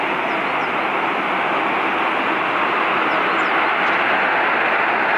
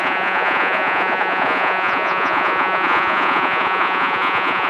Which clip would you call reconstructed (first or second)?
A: second